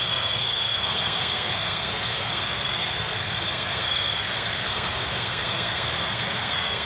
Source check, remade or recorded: remade